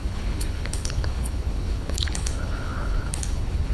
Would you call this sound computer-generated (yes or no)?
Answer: yes